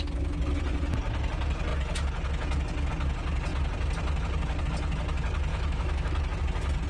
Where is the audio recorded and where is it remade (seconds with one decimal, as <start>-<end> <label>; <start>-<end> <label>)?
0.0-5.5 recorded; 5.5-6.4 remade; 6.4-6.9 recorded